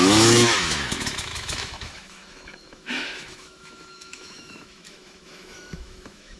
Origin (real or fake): fake